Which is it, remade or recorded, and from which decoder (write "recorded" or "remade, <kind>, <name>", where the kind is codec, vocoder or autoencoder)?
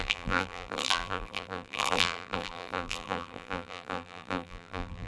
remade, vocoder, BigVGAN v2